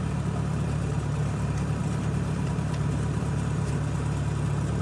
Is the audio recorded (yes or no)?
no